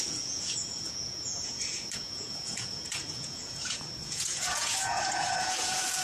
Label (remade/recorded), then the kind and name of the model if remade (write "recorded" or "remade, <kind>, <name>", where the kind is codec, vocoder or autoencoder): remade, vocoder, Vocos